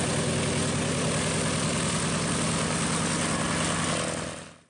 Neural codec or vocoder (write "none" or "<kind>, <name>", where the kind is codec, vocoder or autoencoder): none